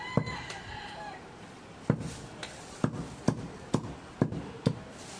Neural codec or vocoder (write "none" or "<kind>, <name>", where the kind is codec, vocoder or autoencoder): none